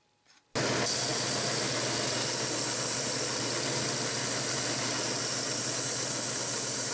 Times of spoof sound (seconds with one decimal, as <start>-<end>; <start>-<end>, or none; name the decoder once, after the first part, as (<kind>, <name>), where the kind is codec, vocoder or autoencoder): none